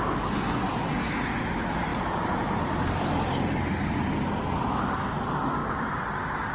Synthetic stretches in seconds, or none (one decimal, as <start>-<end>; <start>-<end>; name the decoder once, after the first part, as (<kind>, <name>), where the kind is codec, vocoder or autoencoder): none